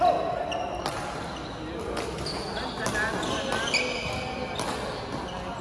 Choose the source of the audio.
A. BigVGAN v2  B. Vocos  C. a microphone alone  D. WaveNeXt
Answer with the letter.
C